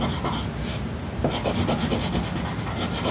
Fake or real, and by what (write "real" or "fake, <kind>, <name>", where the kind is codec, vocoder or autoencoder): real